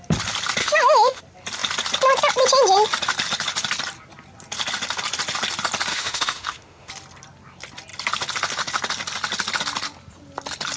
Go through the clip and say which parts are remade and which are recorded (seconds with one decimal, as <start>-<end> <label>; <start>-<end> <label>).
0.0-0.6 recorded; 0.6-1.2 remade; 1.2-5.9 recorded; 5.9-6.9 remade; 6.9-10.8 recorded